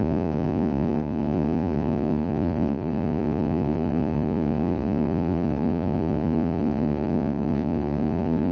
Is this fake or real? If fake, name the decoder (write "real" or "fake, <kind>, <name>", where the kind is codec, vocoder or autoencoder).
fake, vocoder, Vocos